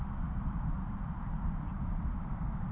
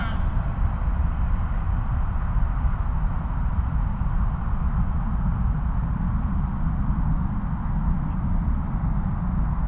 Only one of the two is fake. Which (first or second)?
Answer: first